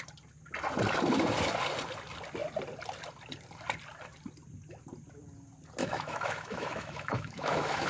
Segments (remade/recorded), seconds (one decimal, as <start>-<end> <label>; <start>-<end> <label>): 0.0-5.8 recorded; 5.8-7.9 remade